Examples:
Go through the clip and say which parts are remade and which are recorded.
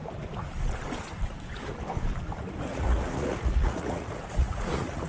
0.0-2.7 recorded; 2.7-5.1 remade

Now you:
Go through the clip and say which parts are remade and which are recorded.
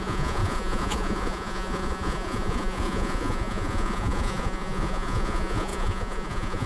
0.0-6.7 remade